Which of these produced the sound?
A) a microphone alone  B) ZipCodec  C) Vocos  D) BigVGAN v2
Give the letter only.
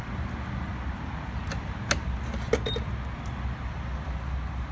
A